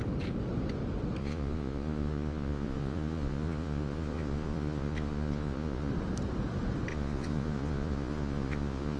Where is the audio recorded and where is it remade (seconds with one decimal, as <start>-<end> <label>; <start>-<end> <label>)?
0.0-1.2 recorded; 1.2-5.9 remade; 5.9-6.9 recorded; 6.9-9.0 remade